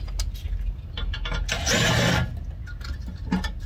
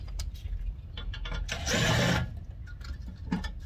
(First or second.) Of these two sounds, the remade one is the second